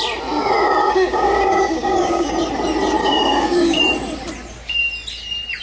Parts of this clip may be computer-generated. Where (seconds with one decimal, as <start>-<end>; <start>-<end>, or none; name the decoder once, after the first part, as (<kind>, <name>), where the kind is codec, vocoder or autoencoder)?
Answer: 0.8-2.3 (codec, DAC); 3.0-3.8